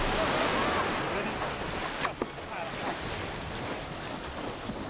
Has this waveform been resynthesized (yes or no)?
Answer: no